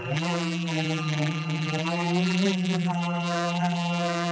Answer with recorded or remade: remade